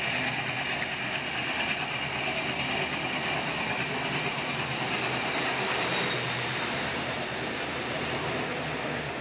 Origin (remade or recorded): recorded